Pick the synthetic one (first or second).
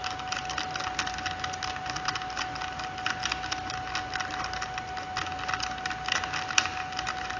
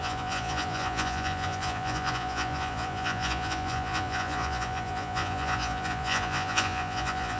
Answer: second